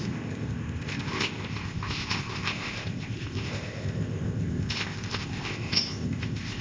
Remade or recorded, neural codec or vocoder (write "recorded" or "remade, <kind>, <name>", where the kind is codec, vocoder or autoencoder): remade, codec, ZipCodec